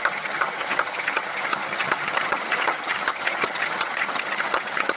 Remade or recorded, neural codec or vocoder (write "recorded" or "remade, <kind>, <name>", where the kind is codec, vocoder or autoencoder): remade, vocoder, HiFi-GAN